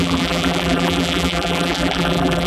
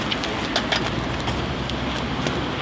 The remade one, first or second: first